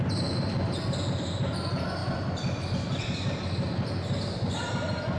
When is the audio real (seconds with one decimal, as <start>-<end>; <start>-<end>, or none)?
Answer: 0.0-5.2